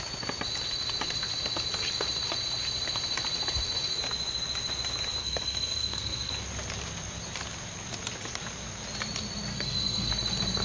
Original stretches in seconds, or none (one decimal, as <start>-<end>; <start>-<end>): 0.0-5.2; 6.3-9.5; 10.1-10.6